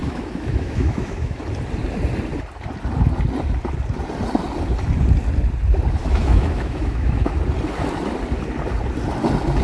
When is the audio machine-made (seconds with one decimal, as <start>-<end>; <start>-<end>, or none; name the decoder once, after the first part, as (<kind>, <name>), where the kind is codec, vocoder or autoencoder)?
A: 0.0-1.4 (autoencoder, DAC-VAE); 6.0-7.3